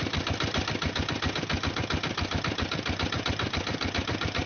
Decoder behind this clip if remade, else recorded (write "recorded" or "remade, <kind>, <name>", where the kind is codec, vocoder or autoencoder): recorded